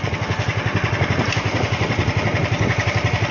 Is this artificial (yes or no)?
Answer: no